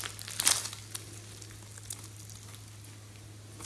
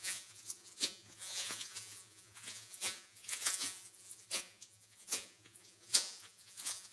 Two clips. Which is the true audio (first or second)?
first